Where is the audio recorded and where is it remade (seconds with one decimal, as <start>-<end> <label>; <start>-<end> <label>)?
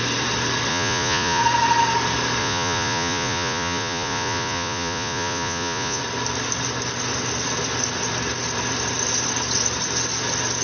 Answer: 0.0-0.7 recorded; 0.7-1.4 remade; 1.4-2.4 recorded; 2.4-6.0 remade; 6.0-10.6 recorded